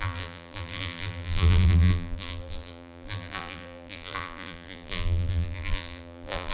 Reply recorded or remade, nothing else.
remade